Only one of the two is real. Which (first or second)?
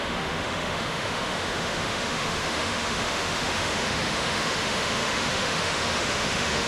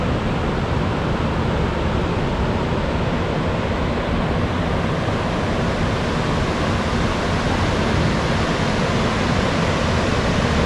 second